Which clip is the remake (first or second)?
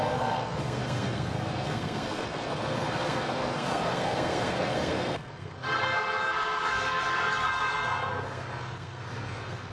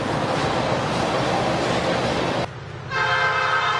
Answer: first